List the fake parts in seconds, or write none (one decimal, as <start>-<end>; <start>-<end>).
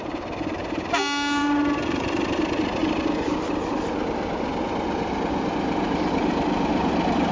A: 1.4-2.4